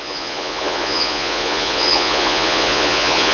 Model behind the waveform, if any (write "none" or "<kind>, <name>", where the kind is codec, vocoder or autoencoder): vocoder, Vocos